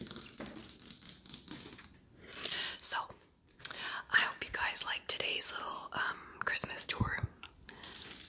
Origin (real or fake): real